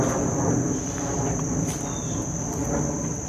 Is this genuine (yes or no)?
yes